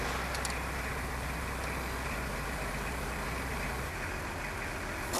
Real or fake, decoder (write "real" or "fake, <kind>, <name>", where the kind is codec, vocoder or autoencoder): real